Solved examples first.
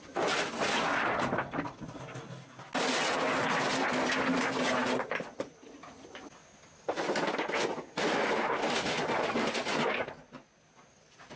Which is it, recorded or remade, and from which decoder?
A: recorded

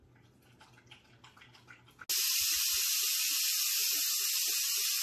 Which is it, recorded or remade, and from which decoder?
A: recorded